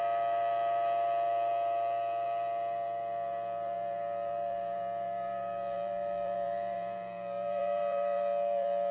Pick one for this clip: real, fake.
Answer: fake